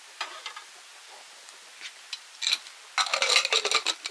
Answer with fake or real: real